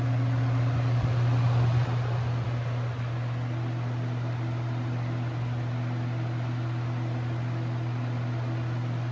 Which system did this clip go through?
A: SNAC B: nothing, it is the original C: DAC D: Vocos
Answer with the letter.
B